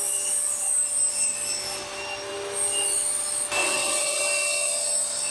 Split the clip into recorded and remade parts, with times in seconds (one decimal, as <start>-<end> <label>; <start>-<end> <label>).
0.0-3.6 recorded; 3.6-4.2 remade; 4.2-5.3 recorded